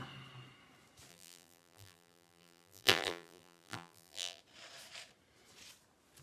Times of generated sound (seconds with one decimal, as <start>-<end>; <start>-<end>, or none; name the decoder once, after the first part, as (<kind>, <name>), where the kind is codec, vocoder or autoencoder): 1.1-4.4 (vocoder, BigVGAN v2)